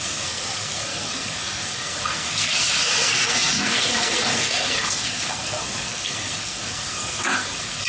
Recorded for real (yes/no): no